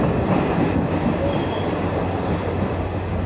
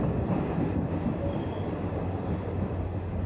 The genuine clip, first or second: first